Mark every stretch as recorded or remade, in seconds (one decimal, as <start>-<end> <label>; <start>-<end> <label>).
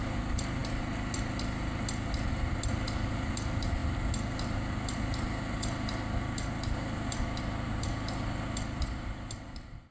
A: 0.0-9.9 recorded